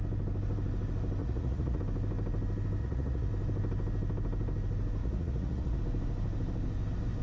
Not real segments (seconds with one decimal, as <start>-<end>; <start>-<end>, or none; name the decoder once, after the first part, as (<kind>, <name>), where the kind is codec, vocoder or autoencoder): 1.2-1.8 (vocoder, Vocos); 2.8-3.3; 5.0-5.8